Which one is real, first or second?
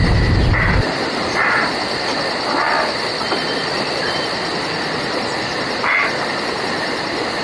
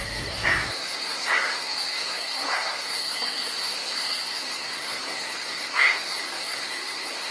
first